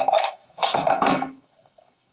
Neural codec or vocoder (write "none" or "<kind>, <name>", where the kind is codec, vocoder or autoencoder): codec, SNAC